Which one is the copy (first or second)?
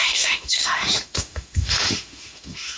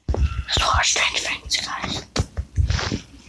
first